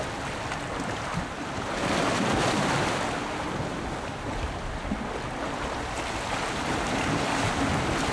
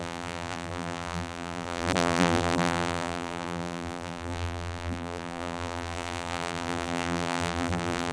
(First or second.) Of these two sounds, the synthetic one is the second